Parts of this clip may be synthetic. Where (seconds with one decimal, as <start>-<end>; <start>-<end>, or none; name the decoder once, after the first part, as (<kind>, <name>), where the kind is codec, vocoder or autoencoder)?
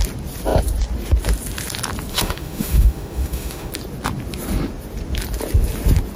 2.1-3.7 (autoencoder, DAC-VAE)